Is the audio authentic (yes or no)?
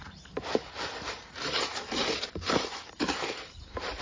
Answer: no